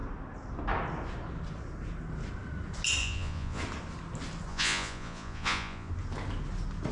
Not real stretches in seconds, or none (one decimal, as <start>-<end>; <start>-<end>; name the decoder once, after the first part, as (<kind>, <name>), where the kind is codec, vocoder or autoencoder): 3.0-3.6 (vocoder, Vocos); 4.5-5.9